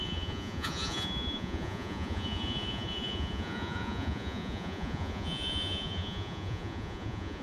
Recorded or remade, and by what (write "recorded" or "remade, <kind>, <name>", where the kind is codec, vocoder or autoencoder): remade, vocoder, Vocos